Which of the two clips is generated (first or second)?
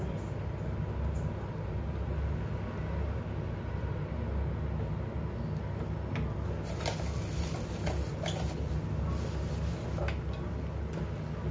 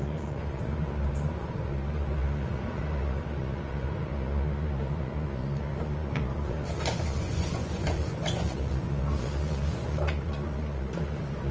second